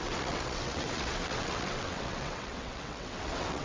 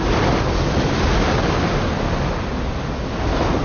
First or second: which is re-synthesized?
first